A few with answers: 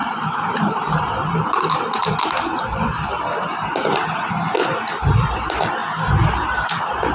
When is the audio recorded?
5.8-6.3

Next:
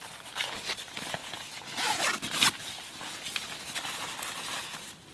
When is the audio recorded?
0.0-1.2; 2.0-5.1